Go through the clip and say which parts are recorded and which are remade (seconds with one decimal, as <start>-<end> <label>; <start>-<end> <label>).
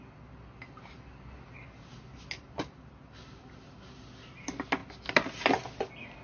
0.0-6.2 recorded